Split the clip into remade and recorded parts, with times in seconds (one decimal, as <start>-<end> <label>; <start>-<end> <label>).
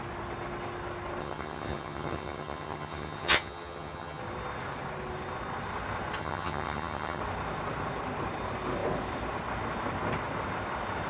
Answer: 0.0-1.2 recorded; 1.2-4.2 remade; 4.2-6.2 recorded; 6.2-7.2 remade; 7.2-11.1 recorded